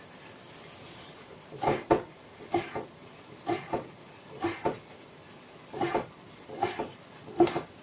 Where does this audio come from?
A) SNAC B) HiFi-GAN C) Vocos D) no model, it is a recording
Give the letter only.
D